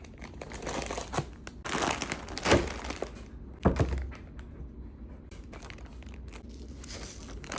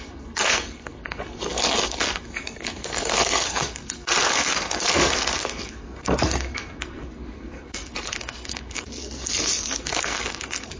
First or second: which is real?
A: first